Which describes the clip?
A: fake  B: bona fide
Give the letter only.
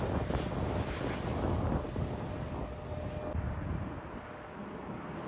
B